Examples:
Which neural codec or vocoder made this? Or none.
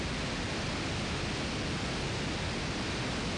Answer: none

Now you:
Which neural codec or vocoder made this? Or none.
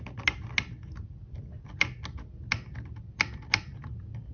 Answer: none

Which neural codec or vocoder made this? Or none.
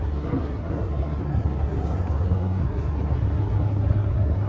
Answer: codec, SNAC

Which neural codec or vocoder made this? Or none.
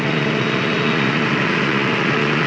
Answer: vocoder, Vocos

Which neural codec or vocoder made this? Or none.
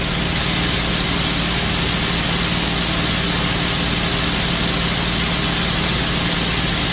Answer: none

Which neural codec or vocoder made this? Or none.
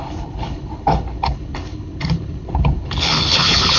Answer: codec, HILCodec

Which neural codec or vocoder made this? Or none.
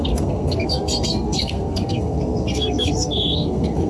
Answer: codec, SNAC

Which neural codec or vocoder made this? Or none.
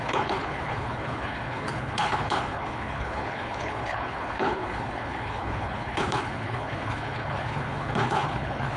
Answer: codec, HILCodec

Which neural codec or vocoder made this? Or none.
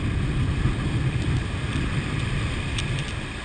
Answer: none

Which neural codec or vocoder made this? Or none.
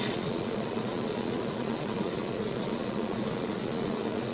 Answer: vocoder, Vocos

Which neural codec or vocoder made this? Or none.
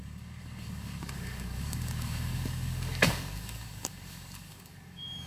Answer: codec, DAC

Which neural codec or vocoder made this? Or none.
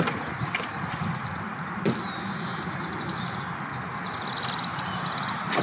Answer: none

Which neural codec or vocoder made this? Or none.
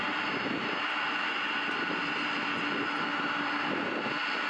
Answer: none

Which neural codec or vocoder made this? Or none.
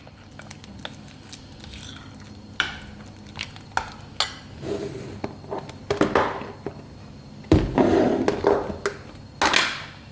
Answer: none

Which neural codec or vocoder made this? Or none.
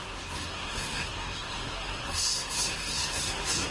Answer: codec, SNAC